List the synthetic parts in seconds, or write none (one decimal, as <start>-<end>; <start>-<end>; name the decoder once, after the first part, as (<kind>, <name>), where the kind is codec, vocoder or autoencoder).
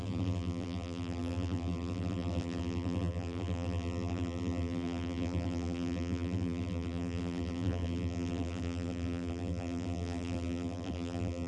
0.0-11.5 (vocoder, BigVGAN v2)